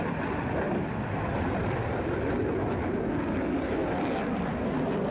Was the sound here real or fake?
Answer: real